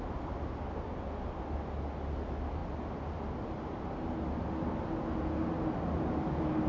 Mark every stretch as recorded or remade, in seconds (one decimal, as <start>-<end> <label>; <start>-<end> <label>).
0.0-6.7 recorded